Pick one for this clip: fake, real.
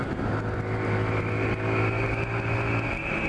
real